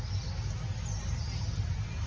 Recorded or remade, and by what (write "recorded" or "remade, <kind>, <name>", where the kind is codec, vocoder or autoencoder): recorded